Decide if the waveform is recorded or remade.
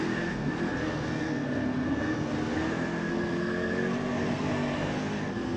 remade